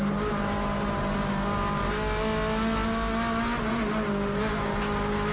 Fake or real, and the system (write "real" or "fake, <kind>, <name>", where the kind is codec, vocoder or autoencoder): real